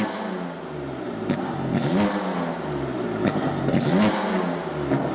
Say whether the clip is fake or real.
real